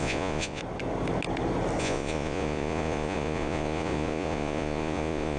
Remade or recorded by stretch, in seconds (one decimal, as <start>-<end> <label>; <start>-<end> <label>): 0.0-0.6 remade; 0.6-1.8 recorded; 1.8-5.4 remade